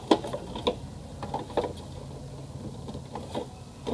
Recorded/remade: recorded